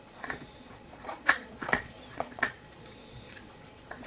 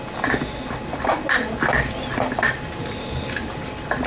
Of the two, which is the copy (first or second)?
first